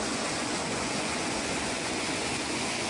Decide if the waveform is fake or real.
fake